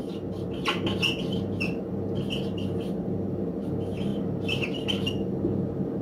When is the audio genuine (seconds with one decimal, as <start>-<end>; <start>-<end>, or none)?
0.0-4.1; 5.3-6.0